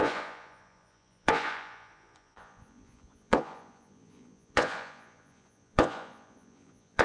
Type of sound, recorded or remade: remade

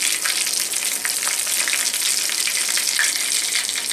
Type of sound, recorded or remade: recorded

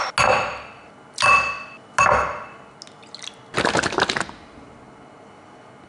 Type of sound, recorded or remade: recorded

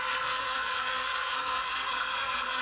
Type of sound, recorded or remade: remade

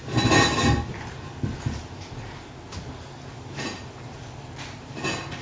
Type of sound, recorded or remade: recorded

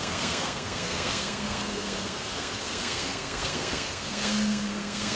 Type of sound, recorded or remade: remade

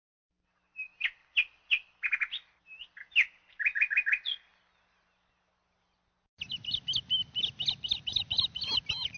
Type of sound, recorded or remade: recorded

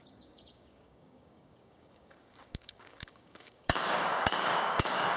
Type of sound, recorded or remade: remade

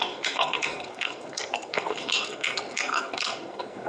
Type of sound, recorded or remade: remade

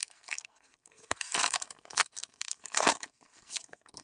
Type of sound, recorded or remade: remade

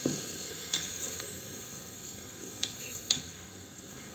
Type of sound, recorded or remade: remade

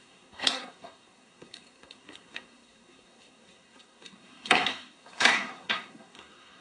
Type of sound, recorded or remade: remade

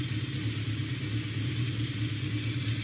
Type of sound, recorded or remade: recorded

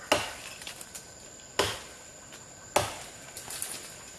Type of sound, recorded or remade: recorded